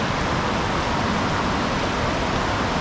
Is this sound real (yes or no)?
yes